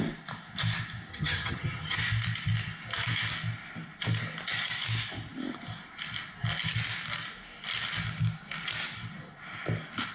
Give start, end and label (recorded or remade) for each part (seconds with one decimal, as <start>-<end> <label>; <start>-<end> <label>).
0.0-1.1 recorded; 1.1-2.0 remade; 2.0-10.1 recorded